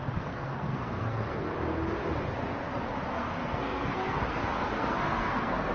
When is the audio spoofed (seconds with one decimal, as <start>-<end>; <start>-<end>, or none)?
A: 0.0-1.5; 3.1-5.7